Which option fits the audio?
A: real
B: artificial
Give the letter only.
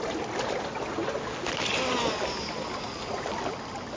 A